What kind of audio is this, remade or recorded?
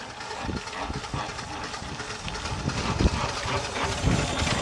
recorded